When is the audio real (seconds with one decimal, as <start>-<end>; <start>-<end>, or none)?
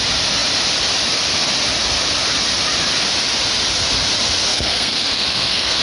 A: 0.0-4.5